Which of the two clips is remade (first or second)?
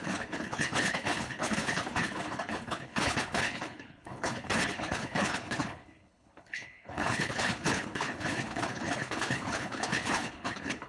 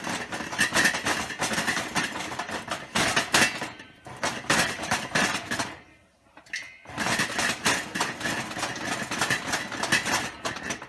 first